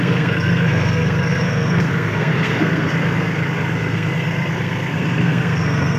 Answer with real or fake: fake